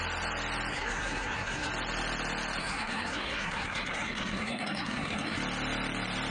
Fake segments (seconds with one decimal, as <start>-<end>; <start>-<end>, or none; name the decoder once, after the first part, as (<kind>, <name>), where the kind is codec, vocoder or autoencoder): 0.7-1.7 (codec, SNAC); 2.6-5.4